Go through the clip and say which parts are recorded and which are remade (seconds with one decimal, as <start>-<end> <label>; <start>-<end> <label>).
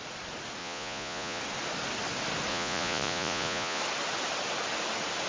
0.0-0.6 recorded; 0.6-1.4 remade; 1.4-2.5 recorded; 2.5-3.8 remade; 3.8-5.3 recorded